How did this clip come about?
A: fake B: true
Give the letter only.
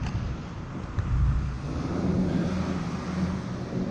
B